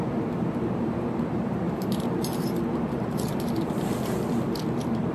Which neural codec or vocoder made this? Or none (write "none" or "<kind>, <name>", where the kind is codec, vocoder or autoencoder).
vocoder, BigVGAN v2